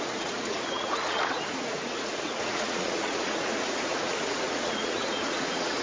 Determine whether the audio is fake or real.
fake